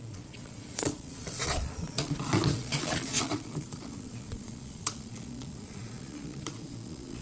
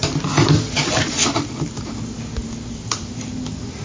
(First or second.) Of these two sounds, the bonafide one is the second